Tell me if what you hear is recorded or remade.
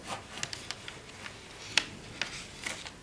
recorded